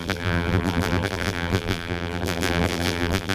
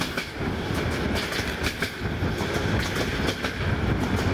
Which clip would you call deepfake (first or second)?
first